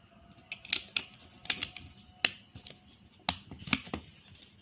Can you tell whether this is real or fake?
real